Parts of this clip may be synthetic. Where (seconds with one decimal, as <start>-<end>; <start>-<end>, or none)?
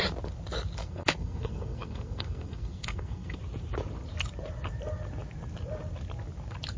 0.8-3.4